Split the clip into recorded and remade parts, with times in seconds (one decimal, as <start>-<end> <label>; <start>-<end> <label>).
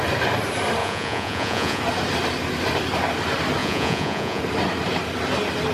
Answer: 0.0-0.8 recorded; 0.8-1.8 remade; 1.8-3.6 recorded; 3.6-4.4 remade; 4.4-5.7 recorded